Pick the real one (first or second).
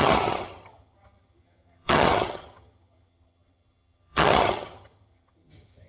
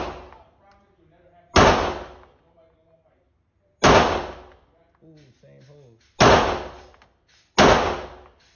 second